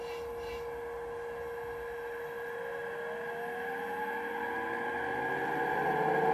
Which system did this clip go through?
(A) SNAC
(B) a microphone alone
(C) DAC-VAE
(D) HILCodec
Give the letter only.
B